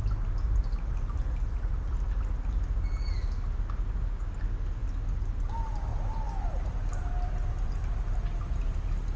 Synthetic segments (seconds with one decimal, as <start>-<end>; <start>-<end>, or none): 5.9-7.7